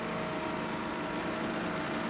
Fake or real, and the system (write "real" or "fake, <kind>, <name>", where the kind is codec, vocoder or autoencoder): real